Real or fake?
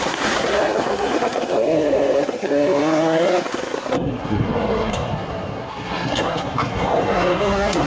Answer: fake